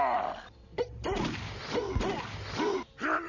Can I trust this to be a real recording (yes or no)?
yes